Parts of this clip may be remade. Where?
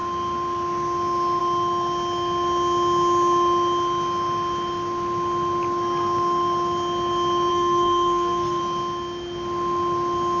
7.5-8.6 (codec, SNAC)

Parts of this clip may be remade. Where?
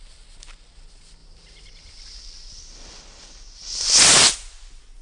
none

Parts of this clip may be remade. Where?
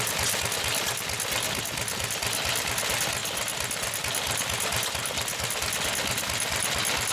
none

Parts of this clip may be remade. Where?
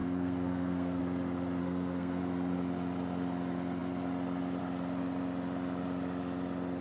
0.0-1.0 (codec, SNAC); 1.6-2.2